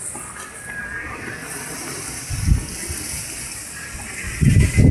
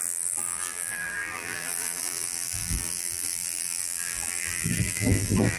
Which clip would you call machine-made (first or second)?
second